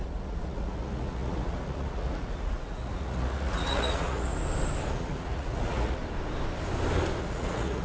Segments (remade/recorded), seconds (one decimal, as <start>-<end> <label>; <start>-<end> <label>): 0.0-4.3 remade; 4.3-4.9 recorded; 4.9-6.0 remade; 6.0-7.2 recorded; 7.2-7.8 remade